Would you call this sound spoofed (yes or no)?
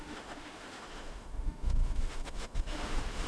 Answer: yes